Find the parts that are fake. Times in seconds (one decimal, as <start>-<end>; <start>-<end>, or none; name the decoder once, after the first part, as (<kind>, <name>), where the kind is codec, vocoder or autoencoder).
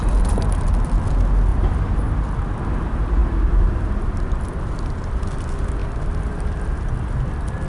1.5-2.0 (vocoder, BigVGAN v2); 3.2-5.2